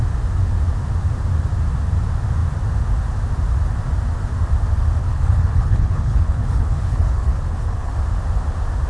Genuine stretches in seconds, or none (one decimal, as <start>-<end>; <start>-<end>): 0.0-5.0; 7.9-8.9